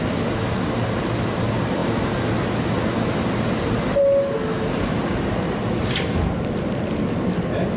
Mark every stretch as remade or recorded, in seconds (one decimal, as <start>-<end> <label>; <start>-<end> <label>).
0.0-7.8 recorded